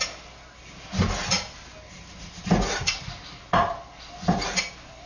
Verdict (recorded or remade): recorded